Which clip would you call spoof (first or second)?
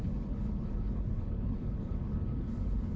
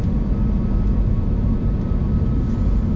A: first